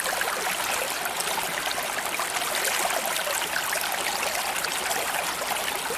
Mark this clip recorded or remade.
recorded